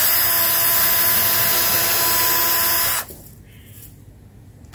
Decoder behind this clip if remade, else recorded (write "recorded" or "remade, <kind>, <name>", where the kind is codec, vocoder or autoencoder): recorded